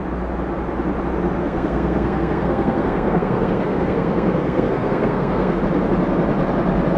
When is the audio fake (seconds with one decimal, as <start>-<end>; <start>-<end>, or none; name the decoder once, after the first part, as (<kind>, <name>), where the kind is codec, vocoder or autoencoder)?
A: 1.4-5.6 (codec, SNAC)